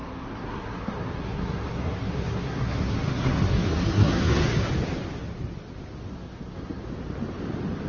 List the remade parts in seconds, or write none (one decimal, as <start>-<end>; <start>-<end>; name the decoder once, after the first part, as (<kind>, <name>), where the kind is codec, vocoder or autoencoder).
0.0-4.7 (codec, SNAC); 6.1-6.8